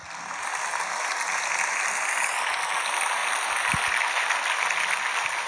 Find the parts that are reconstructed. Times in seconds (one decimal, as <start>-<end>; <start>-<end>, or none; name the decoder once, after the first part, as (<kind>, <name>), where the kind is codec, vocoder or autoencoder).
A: none